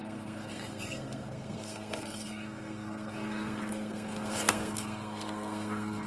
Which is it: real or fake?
fake